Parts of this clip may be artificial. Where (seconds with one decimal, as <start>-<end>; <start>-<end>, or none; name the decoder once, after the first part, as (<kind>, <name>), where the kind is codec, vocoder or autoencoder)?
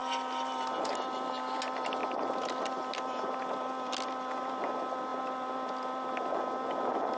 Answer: none